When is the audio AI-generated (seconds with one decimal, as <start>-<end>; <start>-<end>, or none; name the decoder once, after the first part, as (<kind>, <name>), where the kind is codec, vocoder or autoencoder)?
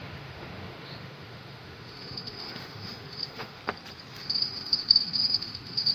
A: 0.0-3.6 (autoencoder, DAC-VAE); 4.1-5.9